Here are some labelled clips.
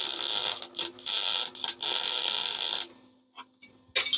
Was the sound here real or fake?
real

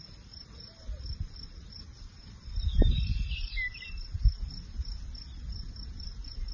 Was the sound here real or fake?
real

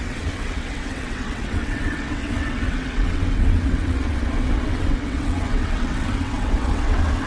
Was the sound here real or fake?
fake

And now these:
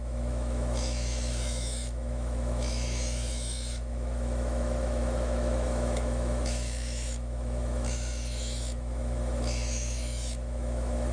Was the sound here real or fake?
fake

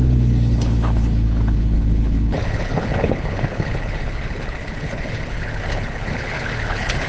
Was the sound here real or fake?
fake